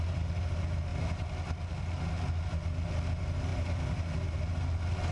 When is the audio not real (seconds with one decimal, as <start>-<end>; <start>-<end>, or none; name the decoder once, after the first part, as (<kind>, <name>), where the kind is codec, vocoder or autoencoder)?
none